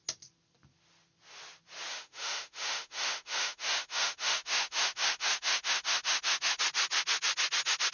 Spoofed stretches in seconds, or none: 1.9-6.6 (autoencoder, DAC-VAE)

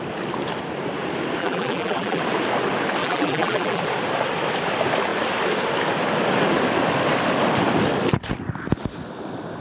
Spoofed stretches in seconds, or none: 1.4-2.2 (vocoder, BigVGAN v2); 3.0-3.8

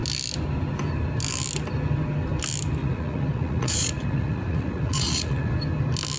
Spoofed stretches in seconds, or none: 2.8-5.5 (vocoder, Vocos)